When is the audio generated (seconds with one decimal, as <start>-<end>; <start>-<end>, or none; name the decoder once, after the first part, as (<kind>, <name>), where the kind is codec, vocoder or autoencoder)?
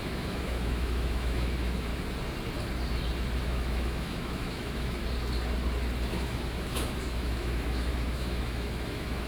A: 0.0-1.9 (autoencoder, DAC-VAE); 3.4-5.0; 6.1-9.3